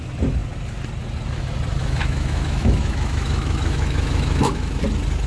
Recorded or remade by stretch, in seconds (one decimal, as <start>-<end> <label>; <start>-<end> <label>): 0.0-1.8 recorded; 1.8-4.8 remade; 4.8-5.3 recorded